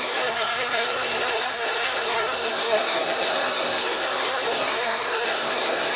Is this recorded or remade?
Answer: remade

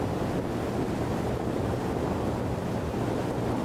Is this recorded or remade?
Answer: recorded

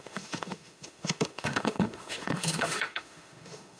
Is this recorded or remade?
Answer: remade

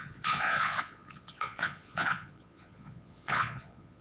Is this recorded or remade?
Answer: remade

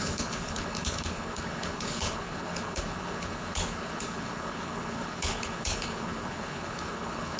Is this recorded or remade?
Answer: remade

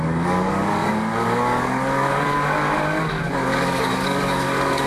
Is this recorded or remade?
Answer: remade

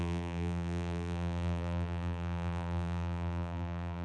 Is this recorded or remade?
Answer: remade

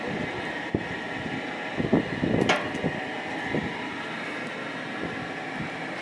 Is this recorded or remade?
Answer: recorded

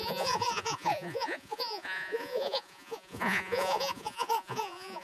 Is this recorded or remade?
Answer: remade